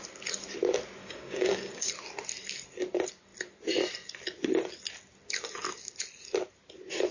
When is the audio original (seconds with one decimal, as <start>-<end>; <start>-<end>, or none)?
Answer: 0.0-1.0; 1.9-7.1